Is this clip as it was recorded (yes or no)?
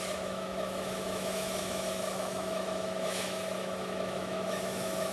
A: no